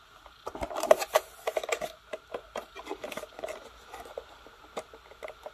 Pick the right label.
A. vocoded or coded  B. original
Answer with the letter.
B